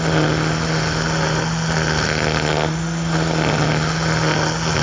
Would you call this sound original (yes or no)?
yes